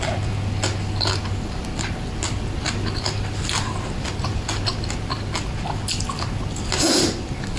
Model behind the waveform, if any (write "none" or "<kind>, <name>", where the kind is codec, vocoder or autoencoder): none